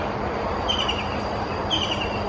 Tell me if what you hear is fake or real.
real